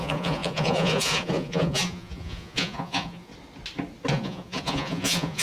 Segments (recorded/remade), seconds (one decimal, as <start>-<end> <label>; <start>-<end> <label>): 0.0-3.3 remade; 3.3-4.1 recorded; 4.1-5.4 remade